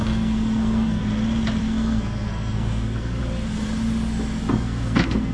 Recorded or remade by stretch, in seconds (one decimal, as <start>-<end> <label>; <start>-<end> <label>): 0.0-1.0 remade; 1.0-1.6 recorded; 1.6-3.2 remade; 3.2-4.5 recorded; 4.5-5.3 remade